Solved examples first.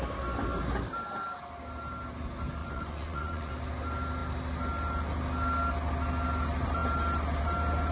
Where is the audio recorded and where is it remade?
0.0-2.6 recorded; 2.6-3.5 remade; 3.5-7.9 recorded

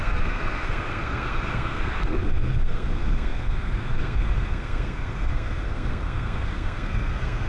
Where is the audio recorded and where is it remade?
0.0-7.5 remade

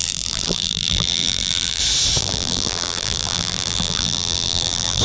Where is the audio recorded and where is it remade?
0.0-1.8 remade; 1.8-2.2 recorded; 2.2-5.0 remade

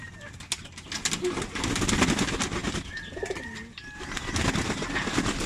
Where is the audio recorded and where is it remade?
0.0-5.5 recorded

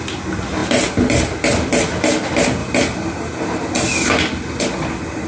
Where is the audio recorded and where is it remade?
0.0-5.3 recorded